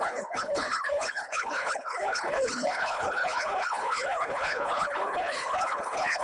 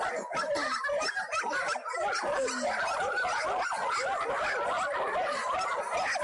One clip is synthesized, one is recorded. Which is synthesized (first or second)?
first